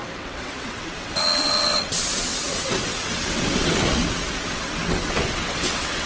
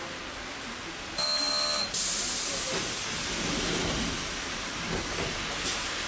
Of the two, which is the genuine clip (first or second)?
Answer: second